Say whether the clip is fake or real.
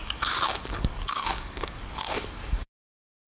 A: fake